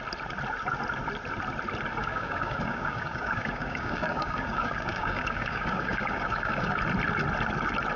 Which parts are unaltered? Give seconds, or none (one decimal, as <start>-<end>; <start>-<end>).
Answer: 0.0-2.0; 6.8-8.0